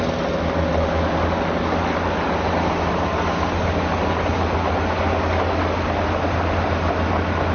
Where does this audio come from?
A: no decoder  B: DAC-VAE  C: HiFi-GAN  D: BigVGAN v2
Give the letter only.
A